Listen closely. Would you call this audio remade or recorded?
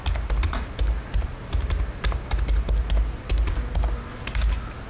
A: recorded